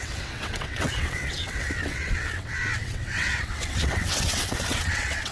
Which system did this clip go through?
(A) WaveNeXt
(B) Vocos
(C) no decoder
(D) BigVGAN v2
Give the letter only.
A